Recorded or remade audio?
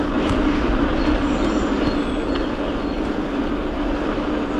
recorded